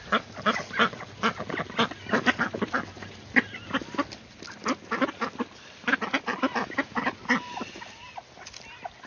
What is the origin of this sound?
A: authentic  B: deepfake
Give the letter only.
A